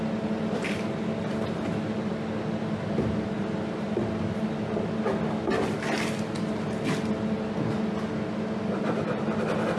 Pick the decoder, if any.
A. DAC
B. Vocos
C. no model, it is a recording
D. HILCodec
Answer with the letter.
C